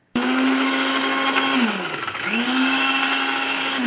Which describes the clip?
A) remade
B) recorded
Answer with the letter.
A